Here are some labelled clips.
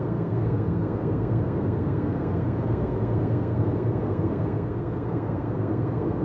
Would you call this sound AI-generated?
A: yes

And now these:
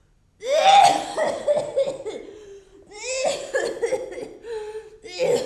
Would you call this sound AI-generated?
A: no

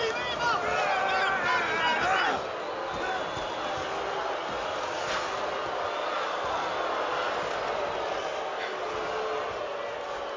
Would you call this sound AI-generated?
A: no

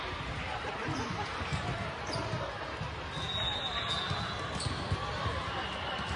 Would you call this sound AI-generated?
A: no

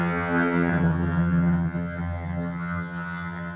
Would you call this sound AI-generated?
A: yes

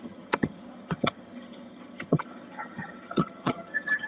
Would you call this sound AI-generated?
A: yes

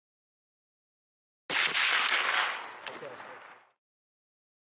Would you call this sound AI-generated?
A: no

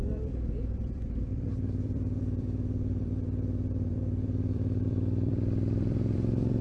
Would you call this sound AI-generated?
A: yes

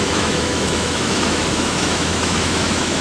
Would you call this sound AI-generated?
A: yes